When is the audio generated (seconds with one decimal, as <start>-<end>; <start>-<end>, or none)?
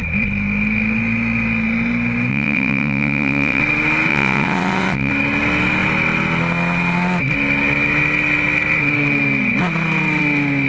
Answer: 2.3-3.6; 4.1-5.1